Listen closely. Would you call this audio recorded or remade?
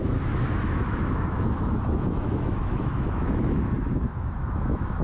remade